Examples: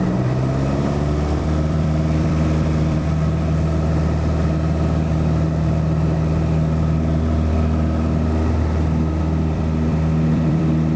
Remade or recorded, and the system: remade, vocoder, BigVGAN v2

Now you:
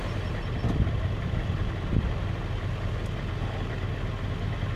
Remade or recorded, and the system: recorded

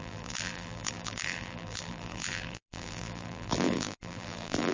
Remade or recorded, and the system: remade, vocoder, BigVGAN v2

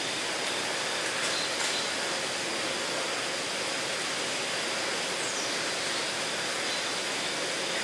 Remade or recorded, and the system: recorded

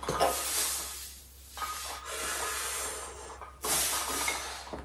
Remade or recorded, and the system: recorded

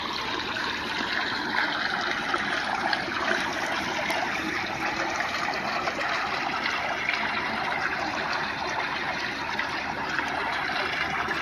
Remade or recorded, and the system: remade, vocoder, BigVGAN v2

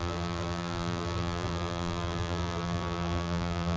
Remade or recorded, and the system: remade, vocoder, BigVGAN v2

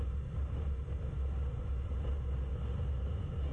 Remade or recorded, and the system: recorded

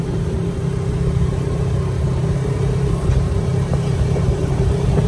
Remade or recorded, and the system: remade, vocoder, BigVGAN v2